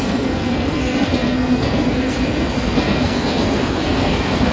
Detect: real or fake fake